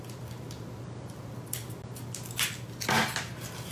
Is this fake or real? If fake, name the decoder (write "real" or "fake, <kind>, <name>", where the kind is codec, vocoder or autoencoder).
real